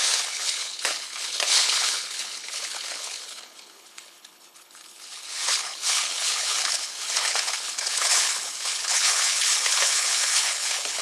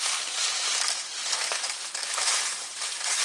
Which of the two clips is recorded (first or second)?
second